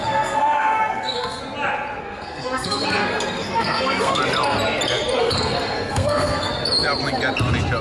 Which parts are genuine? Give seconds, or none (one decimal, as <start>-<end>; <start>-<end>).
1.4-2.0; 4.2-5.2; 6.5-7.8